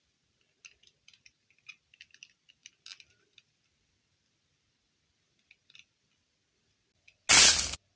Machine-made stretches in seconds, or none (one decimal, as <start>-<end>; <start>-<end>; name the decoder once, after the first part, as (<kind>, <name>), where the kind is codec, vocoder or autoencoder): none